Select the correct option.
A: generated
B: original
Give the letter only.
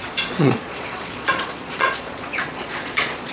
A